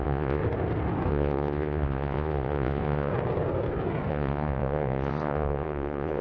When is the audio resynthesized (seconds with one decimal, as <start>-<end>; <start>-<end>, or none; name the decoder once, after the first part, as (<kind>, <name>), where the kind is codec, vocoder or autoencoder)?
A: 0.0-0.4 (vocoder, Vocos); 1.1-3.1; 4.1-6.2